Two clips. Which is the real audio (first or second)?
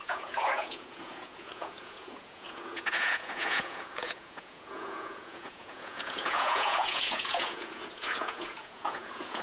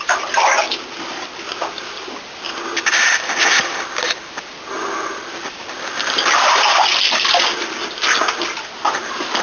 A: second